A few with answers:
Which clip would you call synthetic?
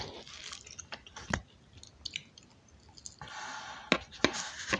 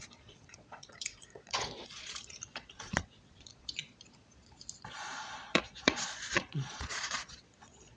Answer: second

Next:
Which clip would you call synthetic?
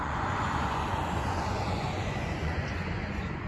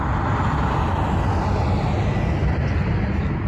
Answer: first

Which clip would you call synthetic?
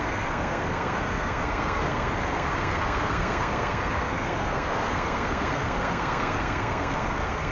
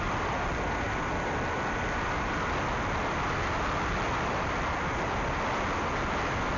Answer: first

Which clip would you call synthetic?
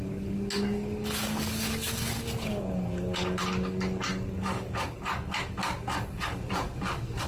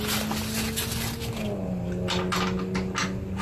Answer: first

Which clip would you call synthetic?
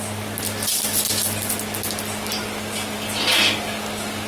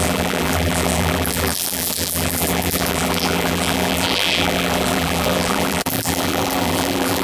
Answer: second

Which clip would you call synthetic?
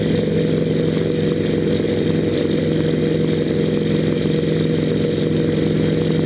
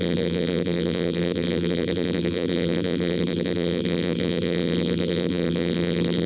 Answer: second